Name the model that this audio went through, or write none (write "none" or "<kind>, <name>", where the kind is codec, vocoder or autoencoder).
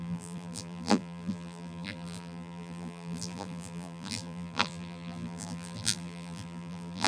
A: vocoder, BigVGAN v2